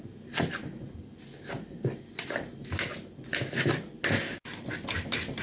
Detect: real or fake real